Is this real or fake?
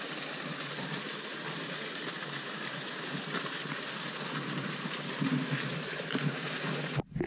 real